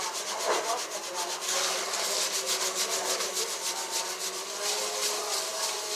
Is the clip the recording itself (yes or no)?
yes